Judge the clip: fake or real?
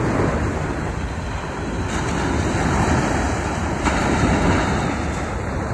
real